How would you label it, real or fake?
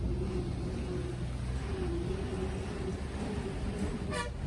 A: real